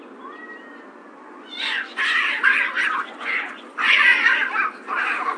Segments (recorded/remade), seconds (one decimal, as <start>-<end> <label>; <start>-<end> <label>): 0.0-1.0 recorded; 1.0-2.0 remade; 2.0-2.5 recorded; 2.5-4.5 remade; 4.5-5.4 recorded